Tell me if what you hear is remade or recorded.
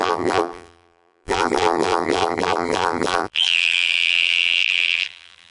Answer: remade